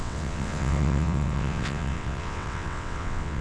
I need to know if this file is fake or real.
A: fake